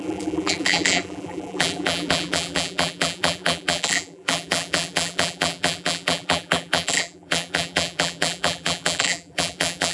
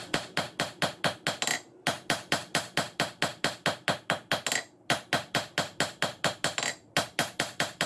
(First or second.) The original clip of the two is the second